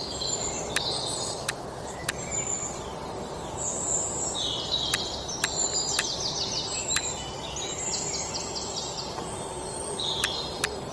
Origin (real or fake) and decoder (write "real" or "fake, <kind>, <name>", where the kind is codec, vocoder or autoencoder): real